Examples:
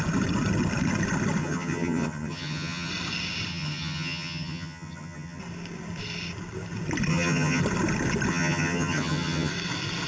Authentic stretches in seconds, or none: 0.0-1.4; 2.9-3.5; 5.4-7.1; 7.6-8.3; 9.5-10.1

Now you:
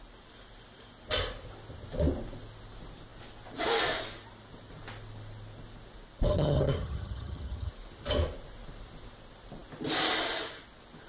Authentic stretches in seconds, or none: 0.0-6.3; 7.7-11.1